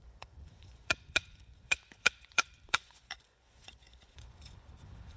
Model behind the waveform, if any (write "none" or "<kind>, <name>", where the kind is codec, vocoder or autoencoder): vocoder, Vocos